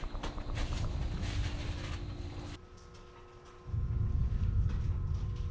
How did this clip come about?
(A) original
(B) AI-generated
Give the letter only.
A